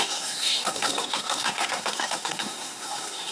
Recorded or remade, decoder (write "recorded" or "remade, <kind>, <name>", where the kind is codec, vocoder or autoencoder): remade, codec, SNAC